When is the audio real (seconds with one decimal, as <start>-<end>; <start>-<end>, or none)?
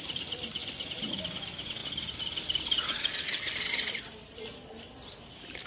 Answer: 0.0-0.6; 1.1-5.7